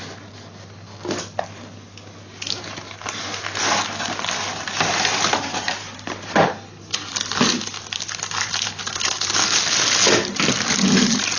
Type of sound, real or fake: real